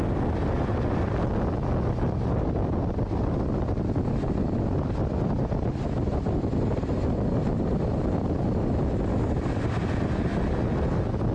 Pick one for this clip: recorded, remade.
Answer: recorded